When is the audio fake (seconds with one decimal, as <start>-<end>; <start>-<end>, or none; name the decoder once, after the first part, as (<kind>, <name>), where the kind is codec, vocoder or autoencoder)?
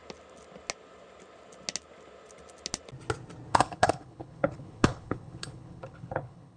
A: 3.5-6.6 (codec, HILCodec)